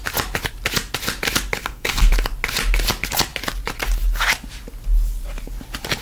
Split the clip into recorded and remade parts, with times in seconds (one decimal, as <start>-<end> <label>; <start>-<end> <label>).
0.0-1.6 recorded; 1.6-2.1 remade; 2.1-6.0 recorded